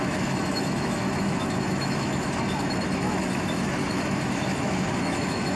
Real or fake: fake